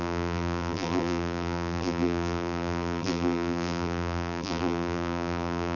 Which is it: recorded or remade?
remade